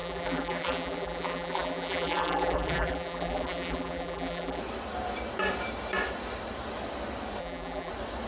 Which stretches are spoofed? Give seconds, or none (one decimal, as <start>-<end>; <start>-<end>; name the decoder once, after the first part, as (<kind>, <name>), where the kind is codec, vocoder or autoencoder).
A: 0.0-4.6 (vocoder, BigVGAN v2); 7.4-7.9

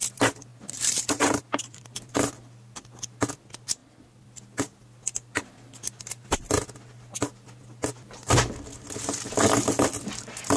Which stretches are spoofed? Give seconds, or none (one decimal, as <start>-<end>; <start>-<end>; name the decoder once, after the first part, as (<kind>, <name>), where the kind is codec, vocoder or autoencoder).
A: 0.5-1.6 (vocoder, BigVGAN v2)

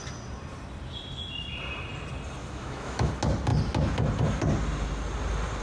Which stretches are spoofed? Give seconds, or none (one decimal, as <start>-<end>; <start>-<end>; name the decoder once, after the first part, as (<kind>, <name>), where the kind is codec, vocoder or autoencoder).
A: 2.4-3.1 (autoencoder, DAC-VAE)

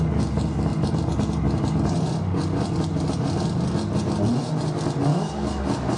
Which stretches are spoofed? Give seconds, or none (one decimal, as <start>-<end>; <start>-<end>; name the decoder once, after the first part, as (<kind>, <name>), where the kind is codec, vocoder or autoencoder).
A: 5.1-5.6 (codec, DAC)